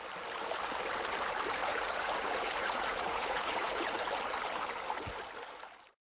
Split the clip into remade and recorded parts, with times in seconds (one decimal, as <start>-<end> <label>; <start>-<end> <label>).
0.0-1.6 recorded; 1.6-4.0 remade; 4.0-6.0 recorded